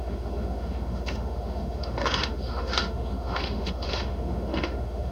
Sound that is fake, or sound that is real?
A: fake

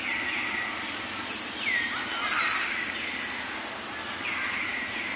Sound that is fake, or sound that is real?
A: real